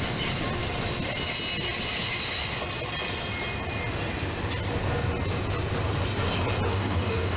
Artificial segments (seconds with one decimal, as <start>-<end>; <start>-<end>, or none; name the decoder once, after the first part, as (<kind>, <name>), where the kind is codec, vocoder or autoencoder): 6.7-7.4 (codec, DAC)